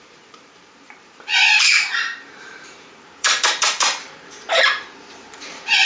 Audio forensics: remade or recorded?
remade